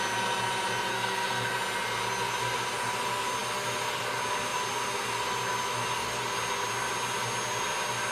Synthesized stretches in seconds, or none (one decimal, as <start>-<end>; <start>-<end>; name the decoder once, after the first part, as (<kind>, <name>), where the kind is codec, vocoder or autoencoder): 0.9-1.5 (codec, SNAC)